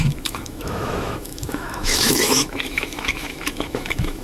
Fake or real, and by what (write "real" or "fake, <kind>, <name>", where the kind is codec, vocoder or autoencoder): fake, autoencoder, DAC-VAE